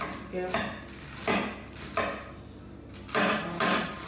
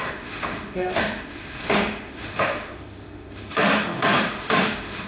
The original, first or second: first